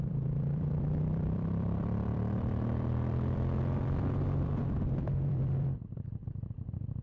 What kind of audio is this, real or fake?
fake